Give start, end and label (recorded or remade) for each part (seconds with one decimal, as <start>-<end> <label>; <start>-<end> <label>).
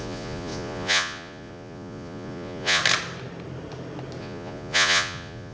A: 0.0-2.8 remade; 2.8-4.2 recorded; 4.2-5.5 remade